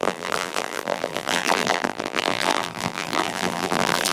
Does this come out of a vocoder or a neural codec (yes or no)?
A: yes